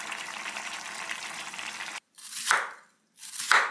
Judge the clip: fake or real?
fake